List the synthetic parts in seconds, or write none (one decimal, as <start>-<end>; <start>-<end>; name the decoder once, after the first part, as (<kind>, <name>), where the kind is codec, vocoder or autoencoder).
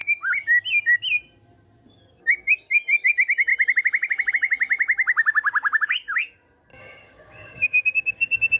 6.7-8.6 (codec, DAC)